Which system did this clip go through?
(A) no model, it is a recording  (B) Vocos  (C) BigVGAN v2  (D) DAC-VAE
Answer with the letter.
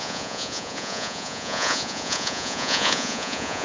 B